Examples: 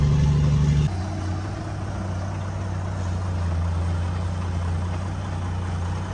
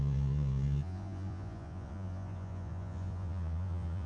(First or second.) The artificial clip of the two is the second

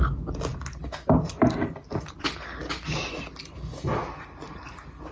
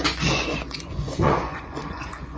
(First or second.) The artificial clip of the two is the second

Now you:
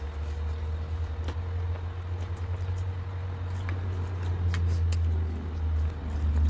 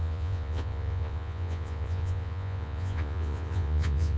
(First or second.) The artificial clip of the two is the second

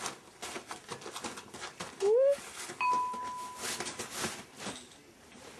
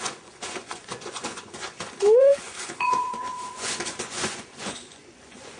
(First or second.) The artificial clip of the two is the second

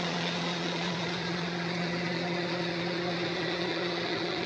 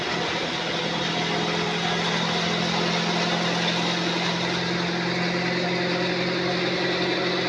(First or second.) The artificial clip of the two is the first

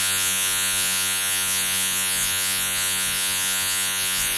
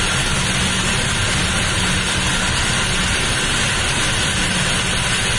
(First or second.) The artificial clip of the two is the first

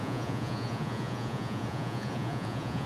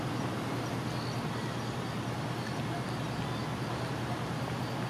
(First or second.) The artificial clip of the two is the first